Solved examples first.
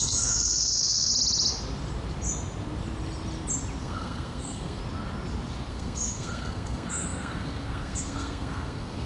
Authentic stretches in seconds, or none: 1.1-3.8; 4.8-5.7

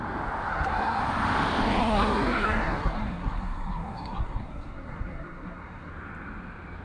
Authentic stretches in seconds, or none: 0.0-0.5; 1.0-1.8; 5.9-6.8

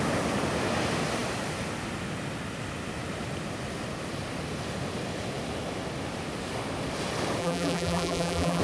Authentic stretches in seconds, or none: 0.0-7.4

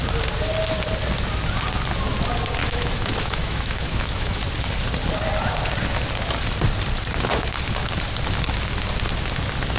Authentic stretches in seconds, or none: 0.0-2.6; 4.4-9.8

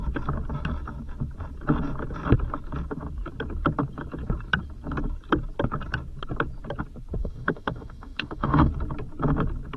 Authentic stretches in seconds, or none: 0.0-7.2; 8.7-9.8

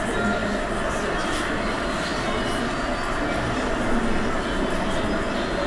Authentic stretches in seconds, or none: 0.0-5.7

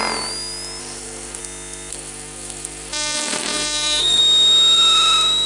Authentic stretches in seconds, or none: 0.0-0.8; 1.4-1.9; 4.2-5.5